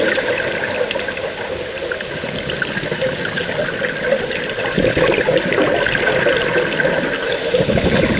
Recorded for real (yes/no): yes